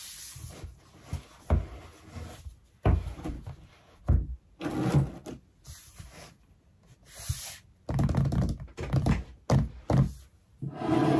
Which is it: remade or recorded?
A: recorded